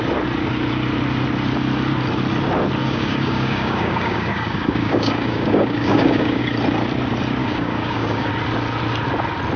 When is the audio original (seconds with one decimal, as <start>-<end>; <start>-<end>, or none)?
0.0-2.8; 6.4-7.4; 8.3-9.6